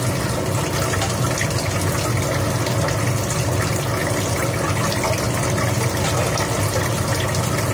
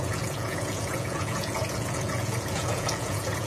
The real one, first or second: first